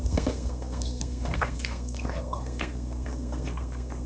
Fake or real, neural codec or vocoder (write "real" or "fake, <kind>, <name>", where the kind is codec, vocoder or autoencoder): fake, codec, SNAC